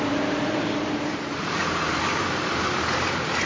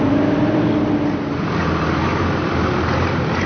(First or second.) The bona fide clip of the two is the second